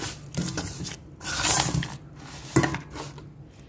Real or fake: real